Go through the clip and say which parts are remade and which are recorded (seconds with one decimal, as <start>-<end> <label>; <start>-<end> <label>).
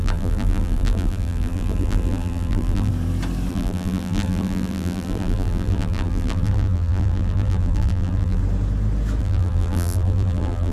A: 0.0-2.9 remade; 2.9-3.5 recorded; 3.5-8.4 remade; 8.4-9.2 recorded; 9.2-10.7 remade